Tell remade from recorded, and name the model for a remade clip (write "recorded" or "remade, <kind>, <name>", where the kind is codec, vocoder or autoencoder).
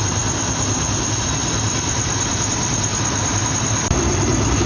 remade, vocoder, BigVGAN v2